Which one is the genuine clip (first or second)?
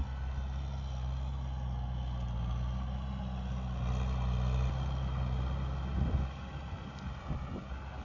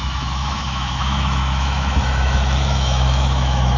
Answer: first